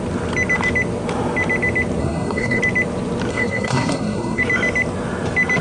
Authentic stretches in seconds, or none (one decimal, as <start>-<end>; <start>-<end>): 0.0-2.0; 2.6-3.3; 4.4-5.6